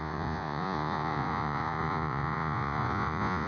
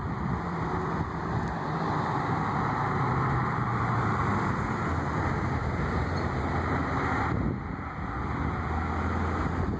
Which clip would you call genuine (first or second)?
second